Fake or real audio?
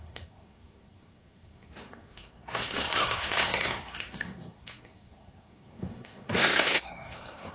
fake